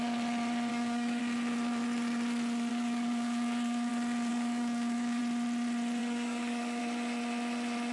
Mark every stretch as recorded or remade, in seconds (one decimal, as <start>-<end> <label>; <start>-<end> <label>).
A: 0.0-0.7 recorded; 0.7-1.2 remade; 1.2-2.7 recorded; 2.7-3.9 remade; 3.9-4.3 recorded; 4.3-5.2 remade; 5.2-6.0 recorded; 6.0-6.8 remade; 6.8-7.9 recorded